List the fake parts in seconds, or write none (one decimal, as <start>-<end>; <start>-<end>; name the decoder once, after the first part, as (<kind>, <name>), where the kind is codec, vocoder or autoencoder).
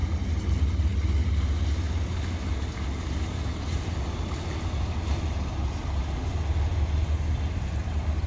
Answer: none